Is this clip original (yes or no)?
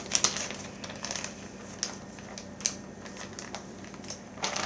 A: yes